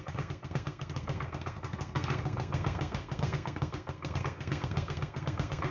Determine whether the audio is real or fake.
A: fake